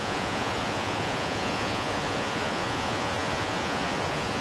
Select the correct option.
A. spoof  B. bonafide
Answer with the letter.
A